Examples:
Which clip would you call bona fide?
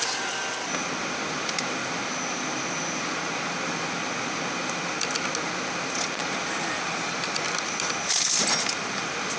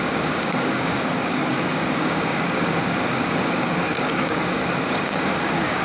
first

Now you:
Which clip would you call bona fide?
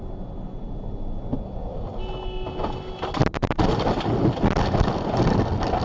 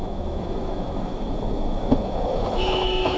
first